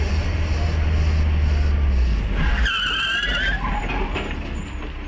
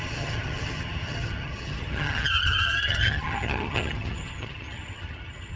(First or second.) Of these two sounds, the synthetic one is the second